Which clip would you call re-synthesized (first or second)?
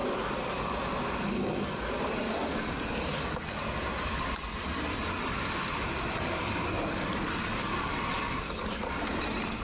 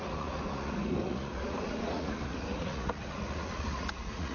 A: second